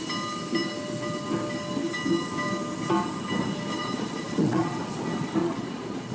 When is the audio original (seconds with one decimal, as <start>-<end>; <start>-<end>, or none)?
0.0-3.8; 4.8-5.4